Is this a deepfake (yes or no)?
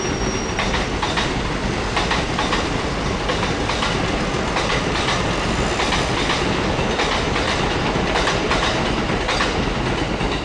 no